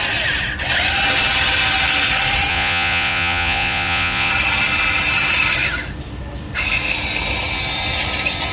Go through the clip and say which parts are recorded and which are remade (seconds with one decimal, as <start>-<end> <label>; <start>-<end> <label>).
0.0-2.5 recorded; 2.5-4.3 remade; 4.3-8.5 recorded

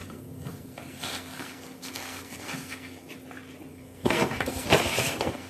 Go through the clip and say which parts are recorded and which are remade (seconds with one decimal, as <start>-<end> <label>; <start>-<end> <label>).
0.0-3.1 remade; 3.1-3.7 recorded; 3.7-5.5 remade

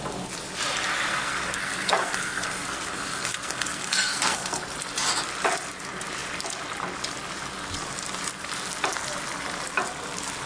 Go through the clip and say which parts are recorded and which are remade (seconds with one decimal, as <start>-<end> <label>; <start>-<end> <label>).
0.0-1.1 recorded; 1.1-4.6 remade; 4.6-10.5 recorded

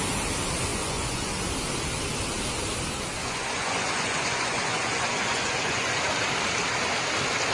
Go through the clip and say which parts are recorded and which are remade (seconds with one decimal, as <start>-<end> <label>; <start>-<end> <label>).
0.0-0.7 recorded; 0.7-1.3 remade; 1.3-3.2 recorded; 3.2-6.0 remade; 6.0-7.5 recorded